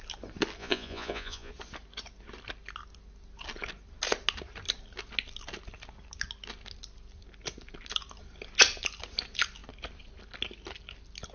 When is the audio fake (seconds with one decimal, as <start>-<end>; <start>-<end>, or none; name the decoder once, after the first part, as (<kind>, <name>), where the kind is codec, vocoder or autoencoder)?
0.6-1.5 (vocoder, Vocos)

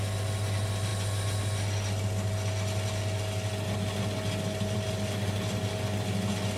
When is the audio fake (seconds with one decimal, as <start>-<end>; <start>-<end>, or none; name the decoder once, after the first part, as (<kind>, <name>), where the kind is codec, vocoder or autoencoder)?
none

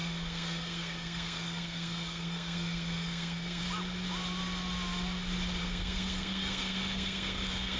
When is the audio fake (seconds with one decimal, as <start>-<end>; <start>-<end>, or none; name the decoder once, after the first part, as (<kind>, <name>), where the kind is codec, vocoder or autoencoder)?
0.0-3.6 (codec, SNAC); 5.6-7.8

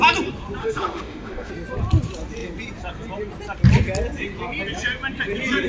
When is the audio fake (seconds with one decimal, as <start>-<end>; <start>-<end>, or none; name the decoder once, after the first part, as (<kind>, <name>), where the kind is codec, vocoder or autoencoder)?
0.6-1.5 (autoencoder, DAC-VAE)

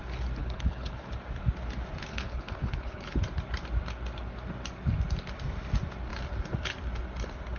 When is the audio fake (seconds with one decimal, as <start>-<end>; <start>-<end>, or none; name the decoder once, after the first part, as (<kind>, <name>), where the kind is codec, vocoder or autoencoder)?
0.4-1.1 (codec, HILCodec); 2.1-3.2

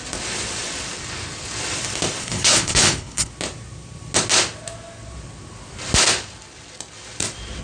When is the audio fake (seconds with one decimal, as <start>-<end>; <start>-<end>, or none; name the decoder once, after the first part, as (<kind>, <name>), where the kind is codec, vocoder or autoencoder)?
2.2-3.3 (codec, HILCodec)

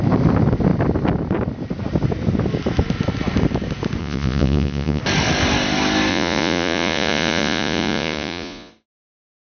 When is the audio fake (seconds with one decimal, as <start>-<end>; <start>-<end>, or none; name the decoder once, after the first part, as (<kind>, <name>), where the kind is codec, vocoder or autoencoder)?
4.0-5.0 (vocoder, Vocos); 6.1-8.7

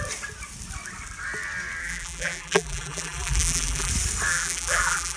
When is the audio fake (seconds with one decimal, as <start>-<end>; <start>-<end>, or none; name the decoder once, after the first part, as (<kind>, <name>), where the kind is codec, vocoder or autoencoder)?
1.8-3.9 (vocoder, BigVGAN v2); 4.3-5.2